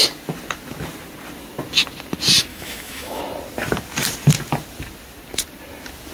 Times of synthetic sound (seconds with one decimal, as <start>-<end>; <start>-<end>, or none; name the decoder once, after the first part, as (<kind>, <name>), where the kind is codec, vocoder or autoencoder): 2.5-3.2 (autoencoder, DAC-VAE)

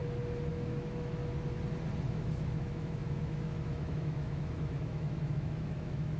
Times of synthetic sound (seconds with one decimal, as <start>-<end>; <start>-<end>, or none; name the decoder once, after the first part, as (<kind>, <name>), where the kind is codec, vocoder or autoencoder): 0.5-1.2 (autoencoder, DAC-VAE); 2.1-6.2

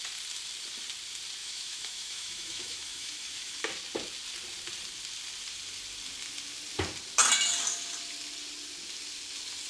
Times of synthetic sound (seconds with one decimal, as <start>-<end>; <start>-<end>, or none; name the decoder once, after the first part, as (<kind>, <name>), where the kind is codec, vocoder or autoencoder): 1.4-3.7 (autoencoder, DAC-VAE)

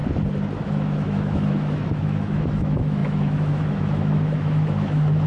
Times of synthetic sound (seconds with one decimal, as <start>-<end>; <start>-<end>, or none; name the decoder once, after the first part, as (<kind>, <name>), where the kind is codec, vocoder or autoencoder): 0.6-5.3 (autoencoder, DAC-VAE)